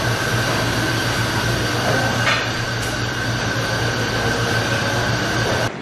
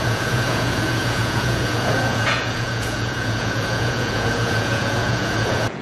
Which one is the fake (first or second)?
second